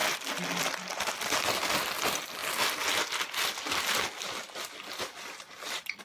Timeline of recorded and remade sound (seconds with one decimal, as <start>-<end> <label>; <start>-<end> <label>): 0.0-2.4 recorded; 2.4-6.0 remade